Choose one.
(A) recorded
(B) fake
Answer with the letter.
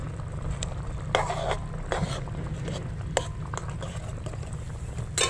A